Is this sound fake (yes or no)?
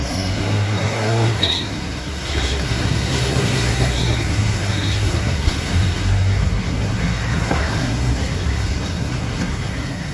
yes